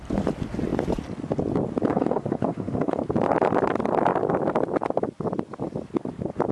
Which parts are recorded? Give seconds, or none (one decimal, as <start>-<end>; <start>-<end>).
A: 0.0-1.9; 3.0-6.5